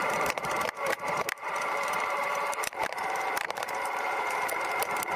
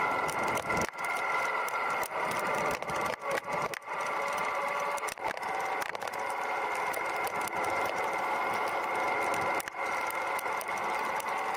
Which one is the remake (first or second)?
first